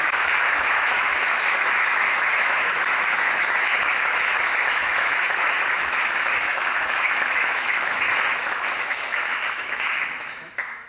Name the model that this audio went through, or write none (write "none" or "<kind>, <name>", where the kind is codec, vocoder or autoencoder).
autoencoder, DAC-VAE